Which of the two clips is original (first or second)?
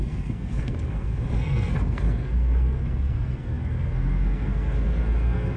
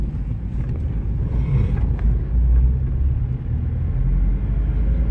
second